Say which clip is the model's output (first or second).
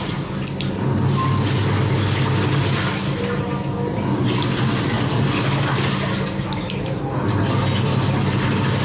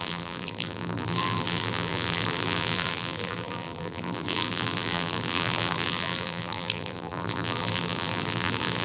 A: second